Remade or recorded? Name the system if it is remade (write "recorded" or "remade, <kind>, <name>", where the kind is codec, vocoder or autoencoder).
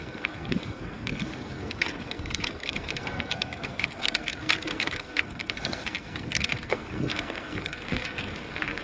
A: remade, codec, SNAC